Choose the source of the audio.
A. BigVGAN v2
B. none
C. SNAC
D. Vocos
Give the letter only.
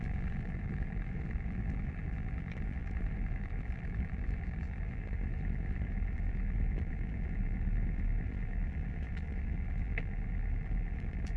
A